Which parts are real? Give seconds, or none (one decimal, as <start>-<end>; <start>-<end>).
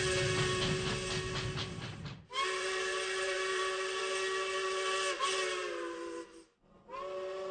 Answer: 0.0-1.6; 4.0-7.5